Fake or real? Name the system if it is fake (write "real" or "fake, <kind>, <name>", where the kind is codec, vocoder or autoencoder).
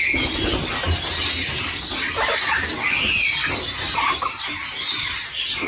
real